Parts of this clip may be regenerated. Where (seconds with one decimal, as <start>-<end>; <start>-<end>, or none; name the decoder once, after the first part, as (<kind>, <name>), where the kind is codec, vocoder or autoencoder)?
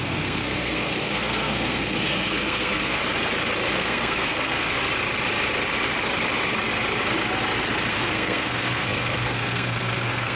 0.0-3.0 (codec, SNAC); 3.7-4.7; 7.9-10.4